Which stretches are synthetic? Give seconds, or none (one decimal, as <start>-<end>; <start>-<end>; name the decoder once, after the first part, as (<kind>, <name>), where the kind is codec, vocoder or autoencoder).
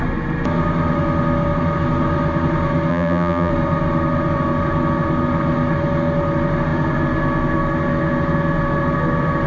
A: 2.9-3.5 (vocoder, BigVGAN v2)